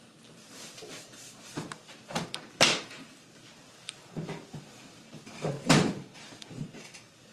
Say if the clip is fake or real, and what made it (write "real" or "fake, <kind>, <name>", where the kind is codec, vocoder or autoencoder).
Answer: fake, vocoder, BigVGAN v2